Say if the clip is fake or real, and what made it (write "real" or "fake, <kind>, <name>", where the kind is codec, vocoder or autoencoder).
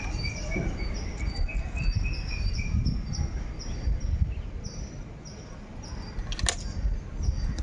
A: real